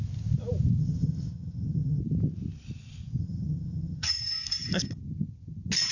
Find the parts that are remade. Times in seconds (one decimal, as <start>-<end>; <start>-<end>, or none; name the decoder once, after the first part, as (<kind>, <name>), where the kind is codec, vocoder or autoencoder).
0.8-2.0 (vocoder, HiFi-GAN); 3.2-4.2